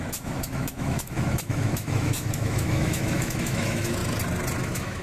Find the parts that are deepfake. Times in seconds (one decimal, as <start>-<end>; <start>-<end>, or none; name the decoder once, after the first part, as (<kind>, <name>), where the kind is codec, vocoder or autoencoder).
0.0-4.0 (autoencoder, DAC-VAE); 4.6-5.0